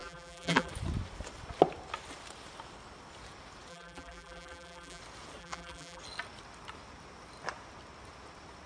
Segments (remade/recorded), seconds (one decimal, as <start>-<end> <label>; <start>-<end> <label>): 0.0-0.7 remade; 0.7-3.7 recorded; 3.7-5.0 remade; 5.0-5.4 recorded; 5.4-6.0 remade; 6.0-8.7 recorded